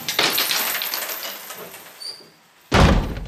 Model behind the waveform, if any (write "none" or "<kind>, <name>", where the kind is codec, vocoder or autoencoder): none